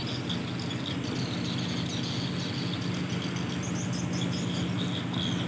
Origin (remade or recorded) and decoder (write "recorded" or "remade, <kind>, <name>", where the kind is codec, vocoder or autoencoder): recorded